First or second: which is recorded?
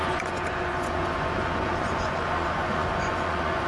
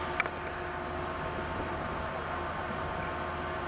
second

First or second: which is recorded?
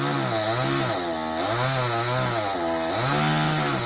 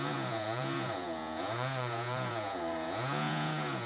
first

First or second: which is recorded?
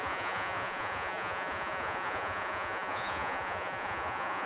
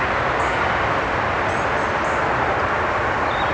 second